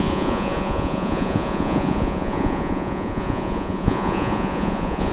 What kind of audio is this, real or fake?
fake